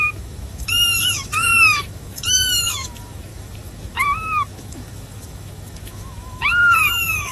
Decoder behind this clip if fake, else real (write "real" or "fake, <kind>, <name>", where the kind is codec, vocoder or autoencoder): fake, autoencoder, DAC-VAE